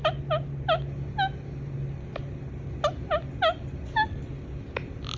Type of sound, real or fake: real